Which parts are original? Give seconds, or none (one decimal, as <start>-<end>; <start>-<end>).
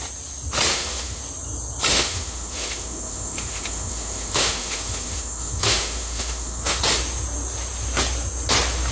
0.0-0.7; 1.2-1.9; 6.8-8.9